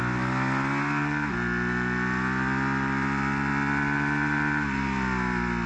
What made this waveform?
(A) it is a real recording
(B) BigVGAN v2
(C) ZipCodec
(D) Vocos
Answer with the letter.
A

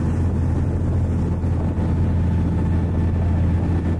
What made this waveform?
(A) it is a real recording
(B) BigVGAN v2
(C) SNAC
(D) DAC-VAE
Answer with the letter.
A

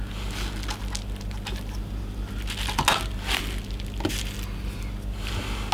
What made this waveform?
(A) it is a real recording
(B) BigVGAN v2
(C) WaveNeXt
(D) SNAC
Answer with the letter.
A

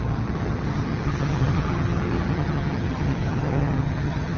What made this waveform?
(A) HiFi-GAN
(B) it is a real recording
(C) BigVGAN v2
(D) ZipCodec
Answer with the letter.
A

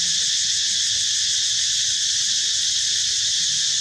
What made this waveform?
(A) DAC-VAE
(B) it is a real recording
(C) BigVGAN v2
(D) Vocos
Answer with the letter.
B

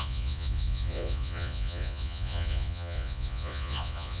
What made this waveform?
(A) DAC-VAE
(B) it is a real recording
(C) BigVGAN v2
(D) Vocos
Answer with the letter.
D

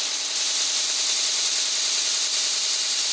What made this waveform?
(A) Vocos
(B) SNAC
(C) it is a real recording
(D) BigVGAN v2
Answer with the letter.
D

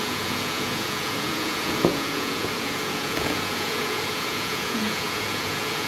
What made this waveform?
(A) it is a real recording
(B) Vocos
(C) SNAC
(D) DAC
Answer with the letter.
B